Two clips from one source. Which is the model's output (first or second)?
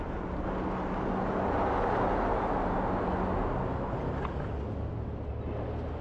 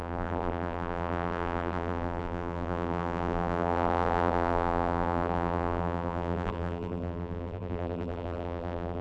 second